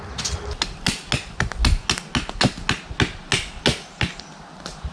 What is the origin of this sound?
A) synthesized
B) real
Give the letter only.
B